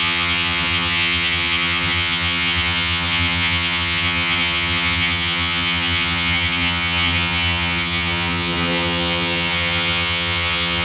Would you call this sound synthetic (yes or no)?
yes